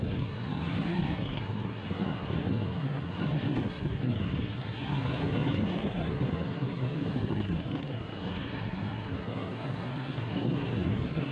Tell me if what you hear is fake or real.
fake